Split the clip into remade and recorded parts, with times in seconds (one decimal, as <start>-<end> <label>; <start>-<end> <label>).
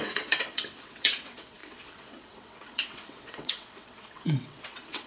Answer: 0.0-5.1 remade